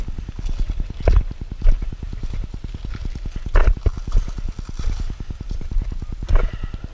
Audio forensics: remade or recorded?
recorded